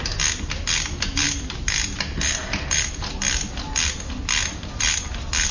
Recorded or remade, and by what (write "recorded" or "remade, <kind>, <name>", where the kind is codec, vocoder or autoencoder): recorded